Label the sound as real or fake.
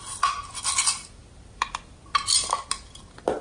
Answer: real